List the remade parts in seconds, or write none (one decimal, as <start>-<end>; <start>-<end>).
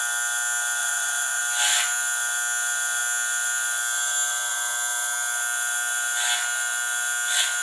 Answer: 0.8-1.4